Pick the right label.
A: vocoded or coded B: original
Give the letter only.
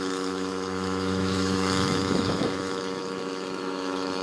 A